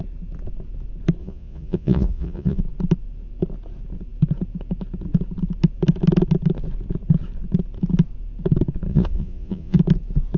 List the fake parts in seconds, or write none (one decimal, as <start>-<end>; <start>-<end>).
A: 1.2-2.6; 8.9-9.8